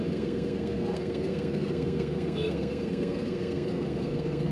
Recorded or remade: remade